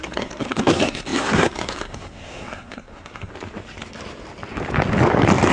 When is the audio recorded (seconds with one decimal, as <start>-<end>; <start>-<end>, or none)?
3.3-5.5